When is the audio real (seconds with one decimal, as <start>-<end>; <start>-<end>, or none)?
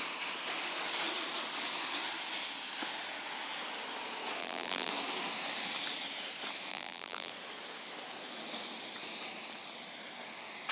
0.0-4.4; 4.9-6.7; 7.3-10.7